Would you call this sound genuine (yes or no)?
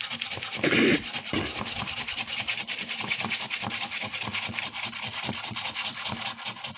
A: yes